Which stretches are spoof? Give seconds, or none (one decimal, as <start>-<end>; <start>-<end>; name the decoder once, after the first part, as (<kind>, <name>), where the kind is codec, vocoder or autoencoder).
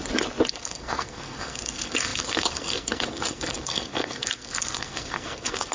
0.5-5.7 (codec, SNAC)